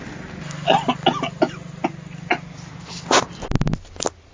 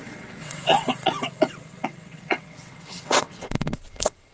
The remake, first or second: second